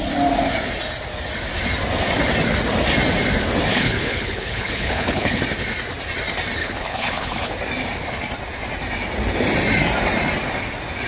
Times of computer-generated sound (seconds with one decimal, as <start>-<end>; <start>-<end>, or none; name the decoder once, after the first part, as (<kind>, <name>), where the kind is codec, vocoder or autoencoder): 3.7-5.4 (codec, HILCodec); 6.6-7.5